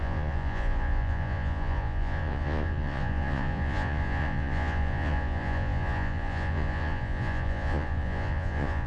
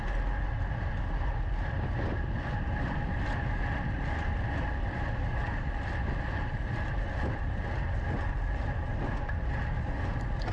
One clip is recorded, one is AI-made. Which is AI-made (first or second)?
first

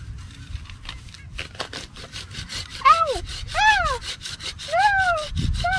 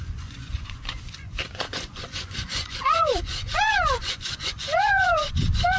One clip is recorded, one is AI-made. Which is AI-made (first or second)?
second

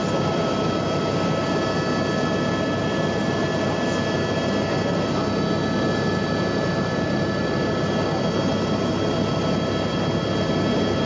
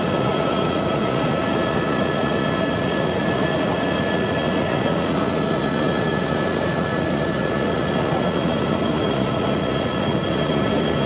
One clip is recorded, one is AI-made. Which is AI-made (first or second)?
second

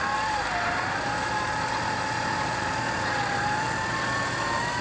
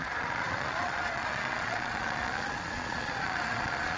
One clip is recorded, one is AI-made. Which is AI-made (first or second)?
second